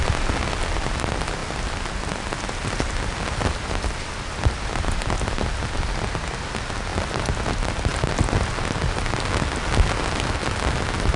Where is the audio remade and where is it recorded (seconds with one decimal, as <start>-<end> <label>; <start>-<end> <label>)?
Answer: 0.0-11.2 recorded